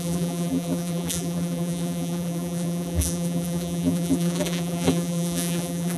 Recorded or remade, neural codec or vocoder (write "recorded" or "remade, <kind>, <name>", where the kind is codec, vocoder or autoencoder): remade, vocoder, BigVGAN v2